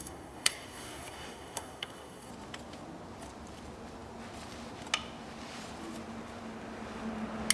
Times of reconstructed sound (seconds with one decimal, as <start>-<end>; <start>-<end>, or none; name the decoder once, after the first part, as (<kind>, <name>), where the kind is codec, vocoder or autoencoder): 0.0-2.3 (codec, SNAC)